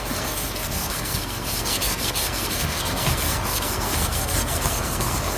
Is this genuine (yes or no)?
no